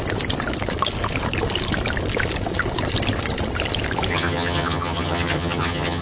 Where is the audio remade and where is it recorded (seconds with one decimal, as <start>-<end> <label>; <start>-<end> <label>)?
0.0-4.1 recorded; 4.1-6.0 remade